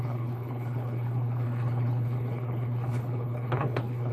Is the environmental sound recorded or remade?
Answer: remade